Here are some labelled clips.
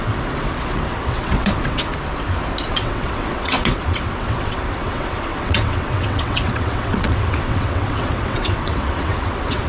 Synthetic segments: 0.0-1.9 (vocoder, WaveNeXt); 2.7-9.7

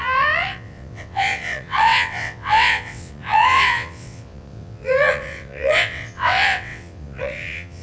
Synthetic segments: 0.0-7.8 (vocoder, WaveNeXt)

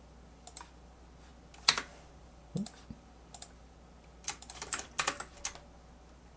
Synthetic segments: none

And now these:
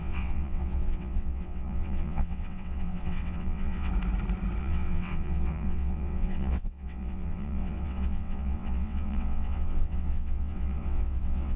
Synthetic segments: 0.0-3.9 (vocoder, WaveNeXt); 4.6-11.6

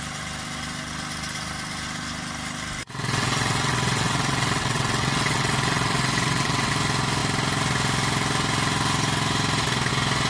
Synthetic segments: 2.8-6.7 (vocoder, WaveNeXt)

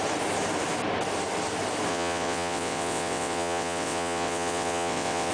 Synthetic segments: 1.9-5.3 (vocoder, WaveNeXt)

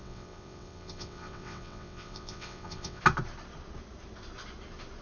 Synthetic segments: 0.0-3.0 (vocoder, WaveNeXt)